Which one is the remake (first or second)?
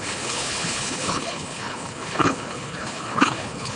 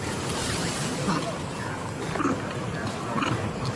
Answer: first